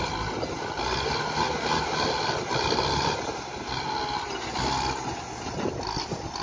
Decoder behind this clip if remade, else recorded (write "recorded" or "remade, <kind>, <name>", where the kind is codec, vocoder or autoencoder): recorded